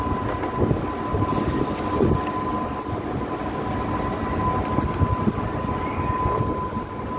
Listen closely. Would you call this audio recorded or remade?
recorded